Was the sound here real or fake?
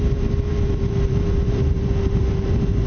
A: fake